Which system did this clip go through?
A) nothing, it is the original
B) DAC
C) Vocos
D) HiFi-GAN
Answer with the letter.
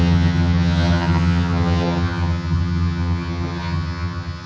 D